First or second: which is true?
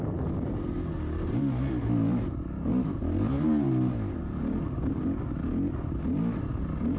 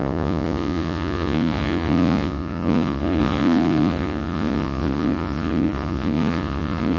first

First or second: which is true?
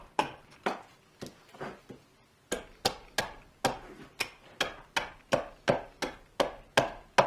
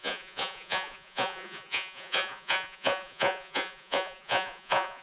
first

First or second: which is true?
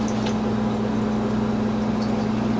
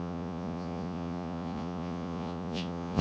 first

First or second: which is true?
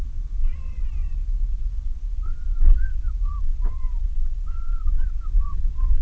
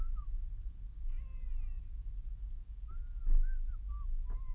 second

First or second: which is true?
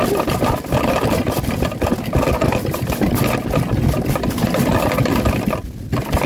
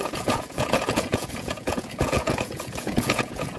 first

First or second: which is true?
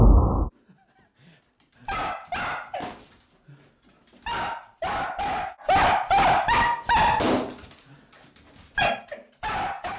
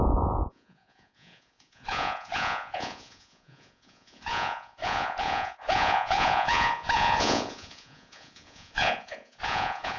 first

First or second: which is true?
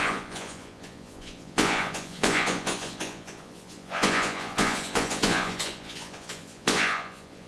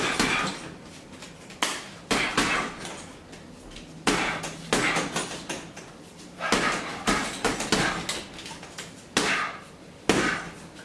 second